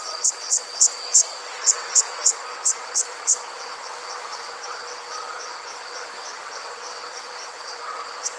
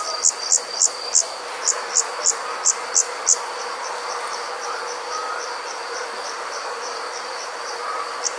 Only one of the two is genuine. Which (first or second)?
second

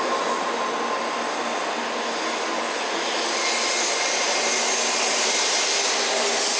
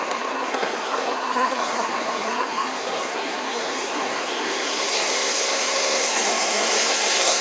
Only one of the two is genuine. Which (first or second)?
first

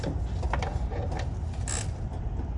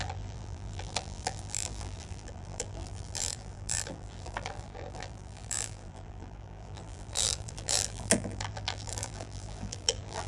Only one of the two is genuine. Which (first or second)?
first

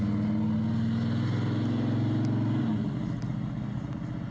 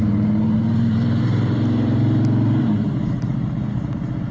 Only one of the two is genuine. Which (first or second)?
first